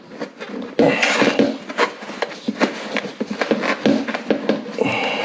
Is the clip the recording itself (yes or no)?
yes